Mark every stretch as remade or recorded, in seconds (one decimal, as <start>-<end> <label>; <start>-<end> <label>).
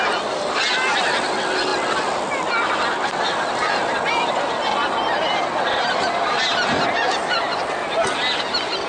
0.0-8.9 recorded